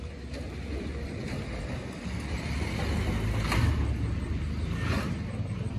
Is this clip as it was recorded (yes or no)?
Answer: yes